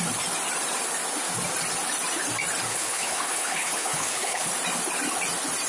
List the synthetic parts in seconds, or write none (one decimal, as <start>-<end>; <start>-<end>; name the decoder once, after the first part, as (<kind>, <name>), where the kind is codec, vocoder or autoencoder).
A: 2.7-4.5 (codec, HILCodec)